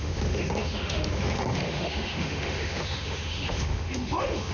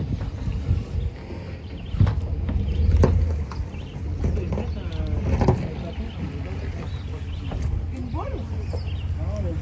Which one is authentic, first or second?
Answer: second